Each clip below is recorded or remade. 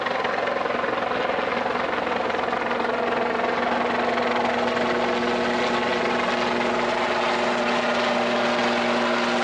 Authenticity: recorded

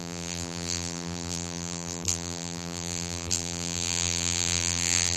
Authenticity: remade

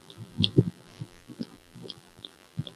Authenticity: remade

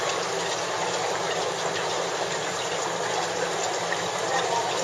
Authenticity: recorded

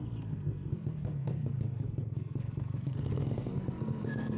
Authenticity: remade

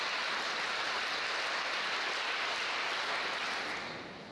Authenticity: recorded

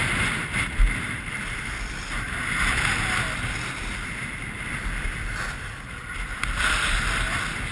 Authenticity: recorded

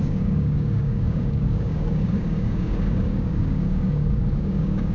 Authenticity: remade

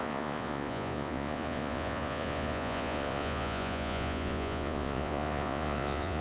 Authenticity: remade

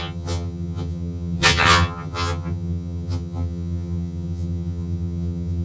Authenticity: remade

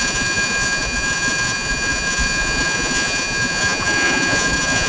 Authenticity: remade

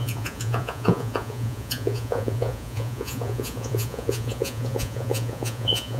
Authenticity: remade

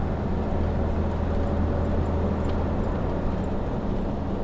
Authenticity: recorded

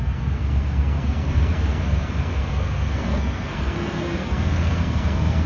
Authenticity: remade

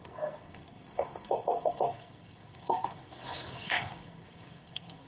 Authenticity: remade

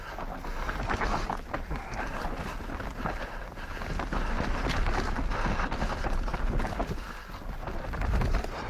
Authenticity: recorded